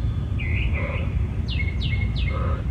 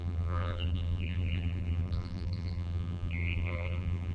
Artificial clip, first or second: second